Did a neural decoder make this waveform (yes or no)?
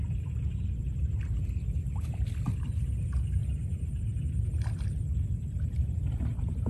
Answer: no